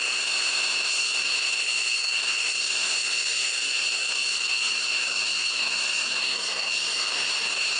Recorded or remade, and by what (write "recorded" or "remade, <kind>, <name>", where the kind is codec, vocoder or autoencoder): remade, codec, SNAC